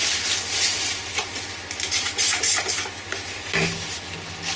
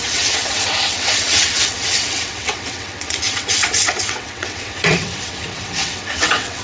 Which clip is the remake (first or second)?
second